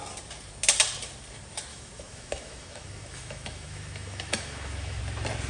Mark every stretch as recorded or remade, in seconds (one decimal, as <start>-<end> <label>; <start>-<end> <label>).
0.0-1.7 recorded; 1.7-5.0 remade; 5.0-5.5 recorded